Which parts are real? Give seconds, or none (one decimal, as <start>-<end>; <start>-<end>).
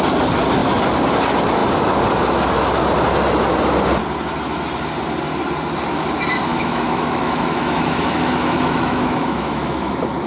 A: 0.0-6.5; 9.9-10.3